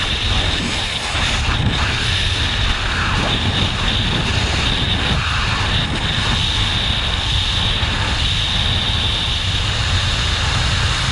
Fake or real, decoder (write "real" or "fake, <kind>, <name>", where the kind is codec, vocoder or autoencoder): real